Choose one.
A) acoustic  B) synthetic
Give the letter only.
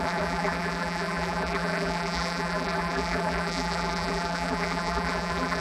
B